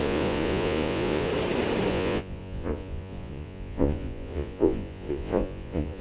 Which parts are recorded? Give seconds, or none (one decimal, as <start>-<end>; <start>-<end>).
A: 1.3-1.9